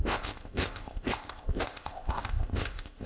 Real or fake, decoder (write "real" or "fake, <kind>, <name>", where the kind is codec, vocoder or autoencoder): fake, codec, ZipCodec